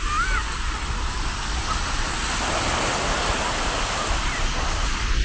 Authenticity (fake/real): fake